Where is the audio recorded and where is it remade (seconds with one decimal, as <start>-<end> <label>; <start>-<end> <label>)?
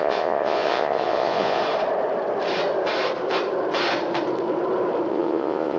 0.0-1.6 remade; 1.6-5.1 recorded; 5.1-5.8 remade